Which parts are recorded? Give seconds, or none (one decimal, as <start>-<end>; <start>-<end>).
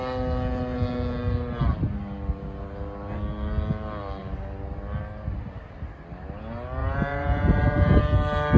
0.0-6.8; 8.0-8.6